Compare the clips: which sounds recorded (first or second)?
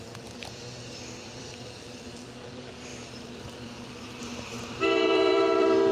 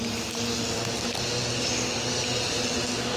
second